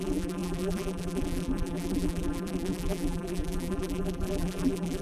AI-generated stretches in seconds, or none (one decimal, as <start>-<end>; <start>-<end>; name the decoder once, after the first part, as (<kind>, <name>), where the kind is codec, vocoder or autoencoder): 0.0-5.0 (vocoder, BigVGAN v2)